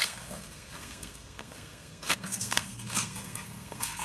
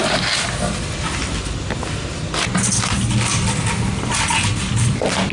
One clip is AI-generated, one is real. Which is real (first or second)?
second